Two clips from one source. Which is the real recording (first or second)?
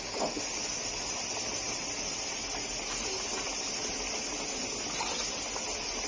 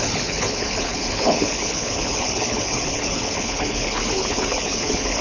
first